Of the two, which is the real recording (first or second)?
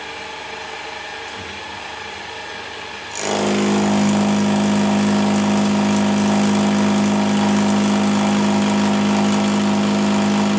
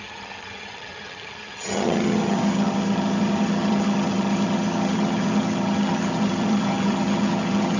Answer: first